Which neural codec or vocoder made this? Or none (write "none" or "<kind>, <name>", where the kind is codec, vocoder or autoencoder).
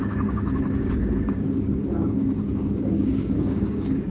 codec, DAC